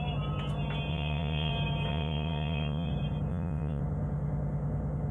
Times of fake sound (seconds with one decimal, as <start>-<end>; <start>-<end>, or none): 0.9-1.5; 1.9-2.9; 3.3-3.8